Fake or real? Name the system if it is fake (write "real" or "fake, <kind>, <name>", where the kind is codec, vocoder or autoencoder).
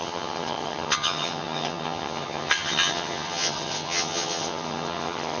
fake, vocoder, HiFi-GAN